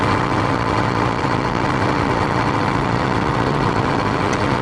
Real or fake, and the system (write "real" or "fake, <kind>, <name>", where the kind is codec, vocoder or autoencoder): fake, vocoder, WaveNeXt